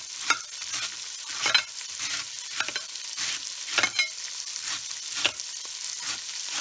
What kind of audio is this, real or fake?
real